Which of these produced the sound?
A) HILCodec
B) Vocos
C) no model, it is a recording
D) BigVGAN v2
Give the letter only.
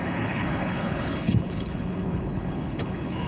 A